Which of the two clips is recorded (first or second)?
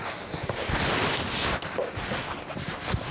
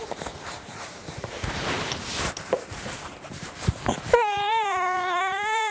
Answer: first